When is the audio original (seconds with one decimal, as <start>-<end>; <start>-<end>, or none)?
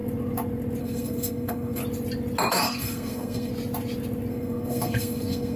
0.0-0.8; 1.8-2.5; 3.5-4.3